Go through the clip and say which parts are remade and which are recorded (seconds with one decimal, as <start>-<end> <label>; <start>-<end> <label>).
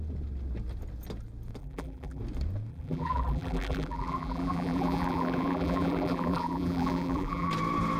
0.0-1.6 recorded; 1.6-2.2 remade; 2.2-2.7 recorded; 2.7-7.5 remade; 7.5-8.0 recorded